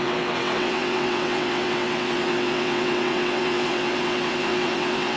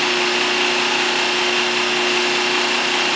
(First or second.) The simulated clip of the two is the first